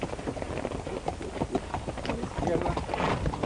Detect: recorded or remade recorded